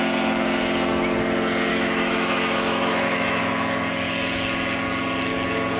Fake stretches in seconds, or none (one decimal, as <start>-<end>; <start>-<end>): 1.7-3.4